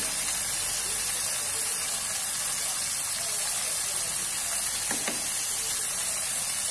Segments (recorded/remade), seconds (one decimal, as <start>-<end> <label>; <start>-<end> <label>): 0.0-6.7 recorded